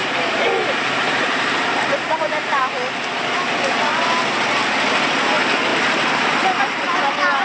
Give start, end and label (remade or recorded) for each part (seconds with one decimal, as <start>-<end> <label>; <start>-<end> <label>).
0.0-2.6 remade; 2.6-5.7 recorded; 5.7-6.6 remade; 6.6-7.4 recorded